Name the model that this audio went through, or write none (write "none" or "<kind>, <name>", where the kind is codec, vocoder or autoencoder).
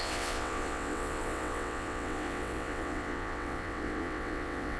vocoder, WaveNeXt